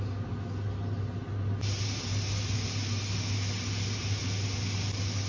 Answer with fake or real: real